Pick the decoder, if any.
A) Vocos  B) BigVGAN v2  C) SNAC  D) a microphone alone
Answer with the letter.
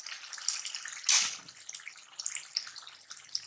D